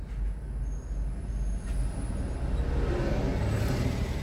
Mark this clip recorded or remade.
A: recorded